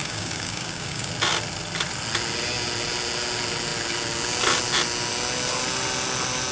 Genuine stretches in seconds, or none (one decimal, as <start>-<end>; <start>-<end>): 1.1-6.5